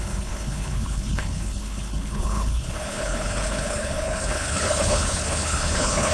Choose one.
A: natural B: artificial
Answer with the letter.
B